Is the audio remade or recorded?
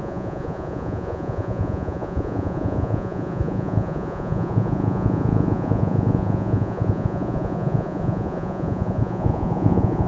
remade